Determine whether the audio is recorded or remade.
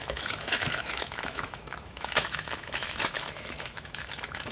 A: remade